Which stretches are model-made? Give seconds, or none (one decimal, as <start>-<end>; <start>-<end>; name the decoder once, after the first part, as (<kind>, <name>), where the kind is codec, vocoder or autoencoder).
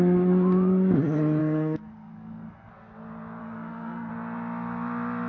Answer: 1.4-2.7 (codec, SNAC); 3.4-4.1